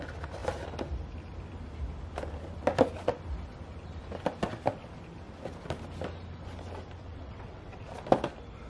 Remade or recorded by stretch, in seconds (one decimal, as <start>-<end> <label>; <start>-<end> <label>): 0.0-7.0 recorded; 7.0-7.9 remade; 7.9-8.7 recorded